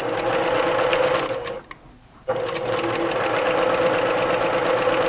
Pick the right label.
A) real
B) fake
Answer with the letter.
A